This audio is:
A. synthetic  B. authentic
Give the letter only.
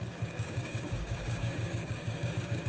A